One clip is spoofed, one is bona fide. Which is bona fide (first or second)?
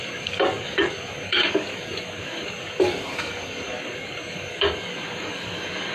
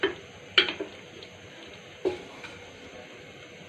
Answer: second